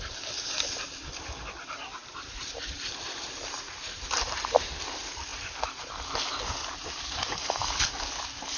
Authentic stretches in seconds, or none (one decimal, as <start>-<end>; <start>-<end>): 0.0-2.0; 3.4-8.6